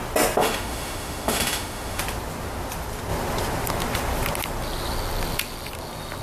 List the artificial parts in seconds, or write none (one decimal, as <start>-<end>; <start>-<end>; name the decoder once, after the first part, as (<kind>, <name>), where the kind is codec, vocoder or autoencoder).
0.4-2.0 (autoencoder, DAC-VAE)